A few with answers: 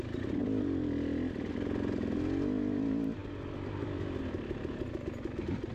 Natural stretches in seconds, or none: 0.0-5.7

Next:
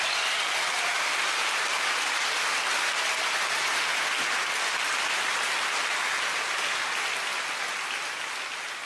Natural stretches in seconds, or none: 0.0-8.9

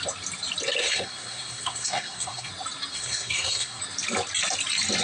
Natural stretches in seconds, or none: 0.0-0.8; 2.5-2.9; 3.8-5.0

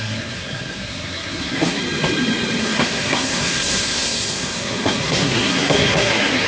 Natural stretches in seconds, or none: 1.8-2.6

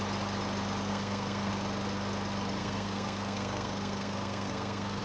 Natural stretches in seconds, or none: 0.0-0.9; 1.5-2.6

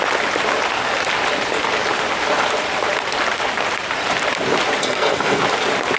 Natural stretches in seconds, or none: 0.0-4.8; 5.4-6.0

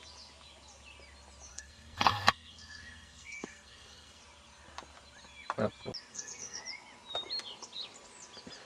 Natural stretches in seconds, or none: 0.0-1.5; 4.2-6.1; 6.6-8.7

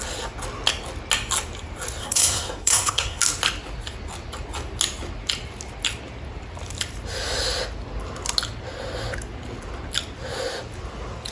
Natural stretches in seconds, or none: 0.0-2.0; 3.2-11.3